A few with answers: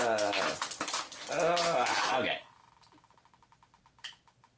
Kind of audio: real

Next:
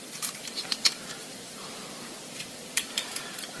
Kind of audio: fake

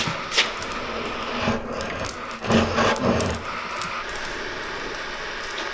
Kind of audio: real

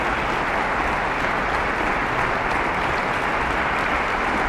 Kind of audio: real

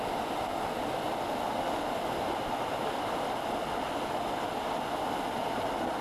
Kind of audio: real